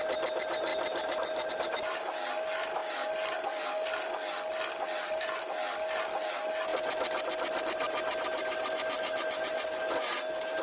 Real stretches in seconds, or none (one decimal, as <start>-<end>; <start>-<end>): 0.0-10.6